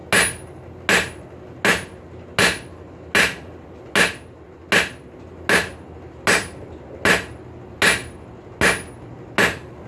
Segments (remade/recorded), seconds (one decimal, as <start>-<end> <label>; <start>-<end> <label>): 0.0-9.9 recorded